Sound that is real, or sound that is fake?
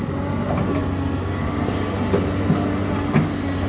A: real